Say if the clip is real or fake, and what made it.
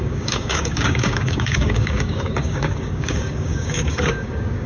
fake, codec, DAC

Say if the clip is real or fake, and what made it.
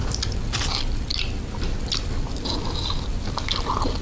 real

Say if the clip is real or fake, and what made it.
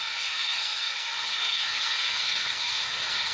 fake, codec, SNAC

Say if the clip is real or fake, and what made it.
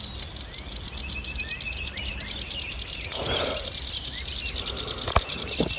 real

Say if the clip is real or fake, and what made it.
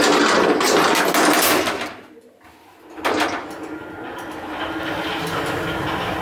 real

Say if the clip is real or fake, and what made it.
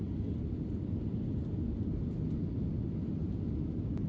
real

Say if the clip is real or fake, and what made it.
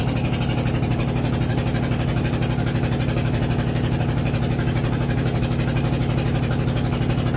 real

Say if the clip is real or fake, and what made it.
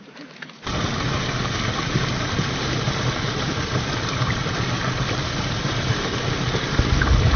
fake, vocoder, BigVGAN v2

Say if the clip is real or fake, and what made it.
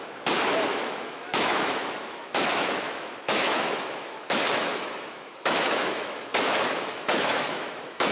fake, autoencoder, DAC-VAE